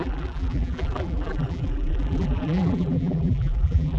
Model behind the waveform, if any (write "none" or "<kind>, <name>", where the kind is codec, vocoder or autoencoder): vocoder, BigVGAN v2